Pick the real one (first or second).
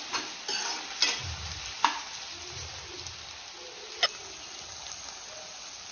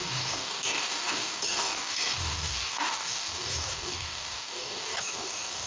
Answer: first